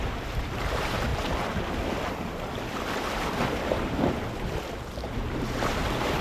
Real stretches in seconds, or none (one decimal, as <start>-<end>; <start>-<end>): 1.1-4.8